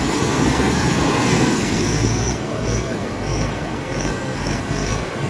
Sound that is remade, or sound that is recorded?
remade